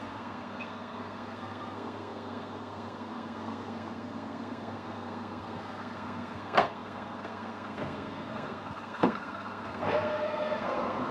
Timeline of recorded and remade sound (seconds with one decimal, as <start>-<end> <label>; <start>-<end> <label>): 0.0-11.1 remade